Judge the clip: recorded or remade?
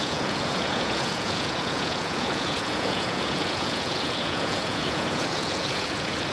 remade